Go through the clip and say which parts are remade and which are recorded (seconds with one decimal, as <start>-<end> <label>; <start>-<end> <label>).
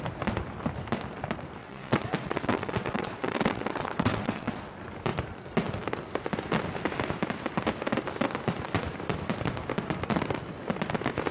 0.0-1.6 recorded; 1.6-4.6 remade; 4.6-11.3 recorded